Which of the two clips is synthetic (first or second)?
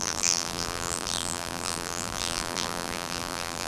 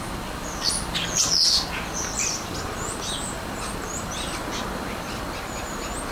first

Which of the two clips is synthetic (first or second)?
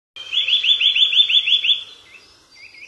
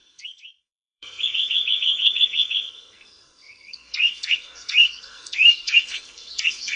second